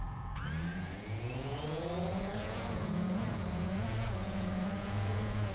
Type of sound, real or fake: fake